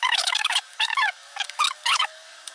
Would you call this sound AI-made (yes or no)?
yes